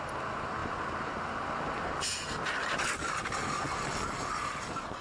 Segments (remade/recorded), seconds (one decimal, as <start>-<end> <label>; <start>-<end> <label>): 0.0-5.0 recorded